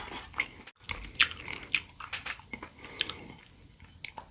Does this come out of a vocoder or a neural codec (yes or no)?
no